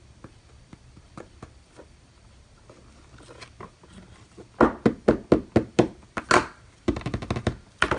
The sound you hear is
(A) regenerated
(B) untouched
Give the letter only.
B